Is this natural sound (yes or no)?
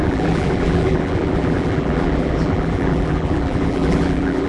no